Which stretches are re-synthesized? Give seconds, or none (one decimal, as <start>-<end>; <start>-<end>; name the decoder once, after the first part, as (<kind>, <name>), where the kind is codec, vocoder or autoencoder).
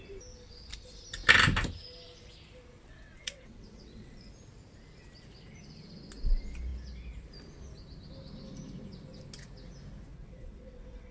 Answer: 2.9-4.3 (vocoder, WaveNeXt); 10.1-11.1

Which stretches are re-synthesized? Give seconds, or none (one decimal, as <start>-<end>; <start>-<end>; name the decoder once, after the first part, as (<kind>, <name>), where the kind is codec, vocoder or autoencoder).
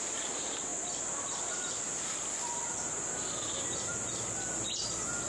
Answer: none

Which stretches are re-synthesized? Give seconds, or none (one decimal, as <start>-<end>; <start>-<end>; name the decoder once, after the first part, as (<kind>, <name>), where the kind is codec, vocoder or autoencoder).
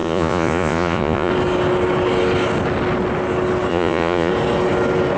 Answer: 0.0-1.3 (vocoder, Vocos); 3.7-4.3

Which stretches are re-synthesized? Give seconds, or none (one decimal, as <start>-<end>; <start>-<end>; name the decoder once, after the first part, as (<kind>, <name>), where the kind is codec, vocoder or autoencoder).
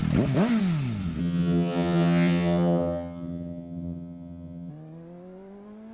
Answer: 1.2-4.7 (vocoder, HiFi-GAN)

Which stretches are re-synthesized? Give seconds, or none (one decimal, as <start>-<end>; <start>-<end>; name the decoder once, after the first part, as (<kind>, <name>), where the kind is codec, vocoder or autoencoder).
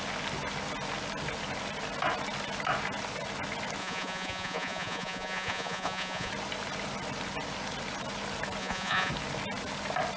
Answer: 3.8-6.3 (vocoder, Vocos); 8.6-9.1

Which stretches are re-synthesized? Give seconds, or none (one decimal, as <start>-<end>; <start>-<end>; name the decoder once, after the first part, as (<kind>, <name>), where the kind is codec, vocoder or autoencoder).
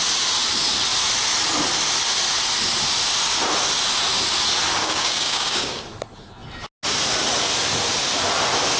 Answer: 4.8-5.8 (codec, DAC)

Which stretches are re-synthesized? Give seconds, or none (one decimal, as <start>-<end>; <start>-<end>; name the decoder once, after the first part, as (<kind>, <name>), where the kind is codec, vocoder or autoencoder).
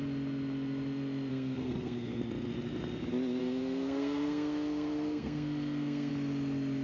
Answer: 1.3-2.2 (codec, SNAC); 3.4-6.1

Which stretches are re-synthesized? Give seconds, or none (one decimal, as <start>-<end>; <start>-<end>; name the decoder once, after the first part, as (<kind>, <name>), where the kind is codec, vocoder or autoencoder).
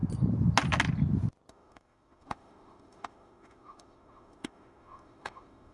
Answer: 1.5-5.7 (autoencoder, DAC-VAE)